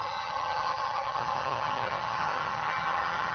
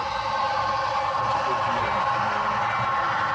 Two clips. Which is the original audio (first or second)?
second